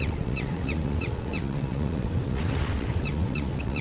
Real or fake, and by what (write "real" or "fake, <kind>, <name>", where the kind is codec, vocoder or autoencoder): fake, vocoder, WaveNeXt